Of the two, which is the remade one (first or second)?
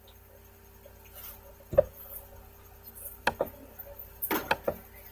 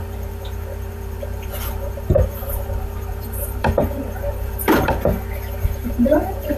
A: second